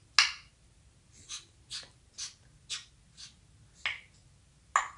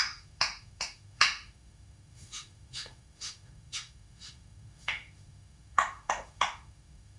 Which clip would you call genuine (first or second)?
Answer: first